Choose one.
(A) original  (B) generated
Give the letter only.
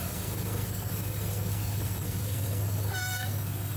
B